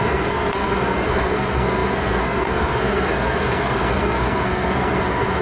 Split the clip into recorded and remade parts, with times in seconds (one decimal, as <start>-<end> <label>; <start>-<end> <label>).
0.0-5.4 remade